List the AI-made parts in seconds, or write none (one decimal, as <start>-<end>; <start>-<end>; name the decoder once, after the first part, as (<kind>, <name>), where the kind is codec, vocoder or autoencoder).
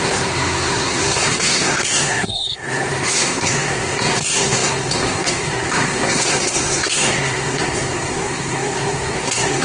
0.0-9.6 (codec, SNAC)